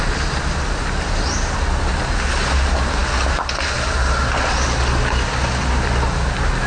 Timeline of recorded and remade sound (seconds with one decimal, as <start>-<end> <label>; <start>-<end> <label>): 0.0-6.7 recorded